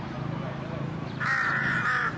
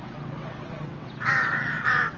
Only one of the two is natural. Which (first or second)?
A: first